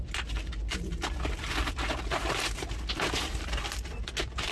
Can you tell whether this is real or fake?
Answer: real